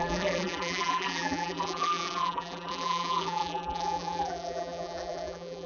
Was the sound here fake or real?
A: fake